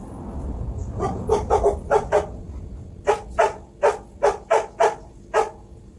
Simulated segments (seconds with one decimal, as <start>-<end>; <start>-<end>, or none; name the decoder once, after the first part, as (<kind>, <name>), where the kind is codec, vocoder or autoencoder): none